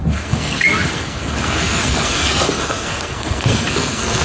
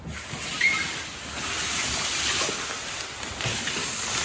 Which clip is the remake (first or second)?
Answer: first